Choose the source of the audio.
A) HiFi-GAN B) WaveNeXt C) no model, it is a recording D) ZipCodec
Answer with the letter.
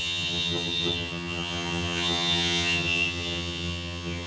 A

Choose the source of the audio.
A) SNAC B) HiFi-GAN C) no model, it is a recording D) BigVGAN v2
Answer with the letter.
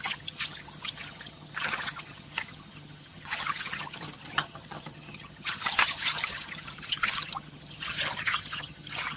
B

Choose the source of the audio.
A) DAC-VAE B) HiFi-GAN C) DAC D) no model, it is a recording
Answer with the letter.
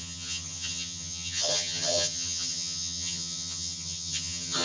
B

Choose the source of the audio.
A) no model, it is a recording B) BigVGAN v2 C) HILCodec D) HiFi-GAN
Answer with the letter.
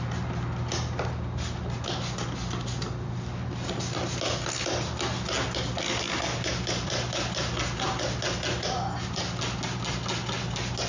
A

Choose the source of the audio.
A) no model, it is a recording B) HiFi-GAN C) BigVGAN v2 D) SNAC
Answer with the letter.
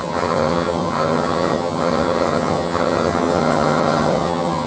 B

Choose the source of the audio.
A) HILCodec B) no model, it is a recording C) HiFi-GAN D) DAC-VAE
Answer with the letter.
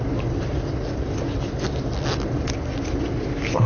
B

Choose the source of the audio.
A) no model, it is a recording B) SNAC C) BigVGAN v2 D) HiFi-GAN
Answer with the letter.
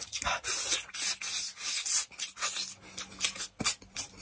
A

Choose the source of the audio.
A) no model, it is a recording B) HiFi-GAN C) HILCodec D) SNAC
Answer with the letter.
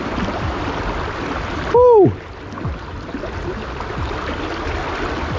A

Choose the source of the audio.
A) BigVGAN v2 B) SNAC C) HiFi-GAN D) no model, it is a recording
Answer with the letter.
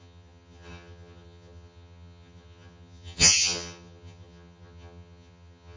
C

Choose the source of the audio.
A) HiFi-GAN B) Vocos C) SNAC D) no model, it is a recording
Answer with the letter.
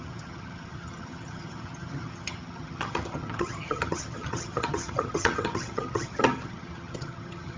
A